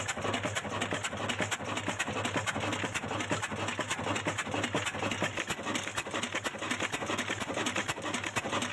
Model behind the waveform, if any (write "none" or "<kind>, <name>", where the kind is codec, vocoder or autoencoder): none